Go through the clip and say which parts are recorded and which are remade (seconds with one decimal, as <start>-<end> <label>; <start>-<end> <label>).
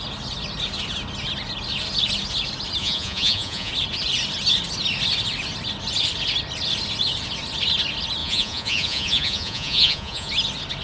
0.0-2.8 recorded; 2.8-3.7 remade; 3.7-8.2 recorded; 8.2-10.3 remade; 10.3-10.8 recorded